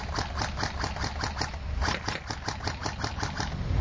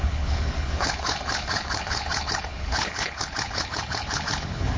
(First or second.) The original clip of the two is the first